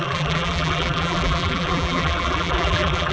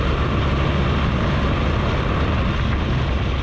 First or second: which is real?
second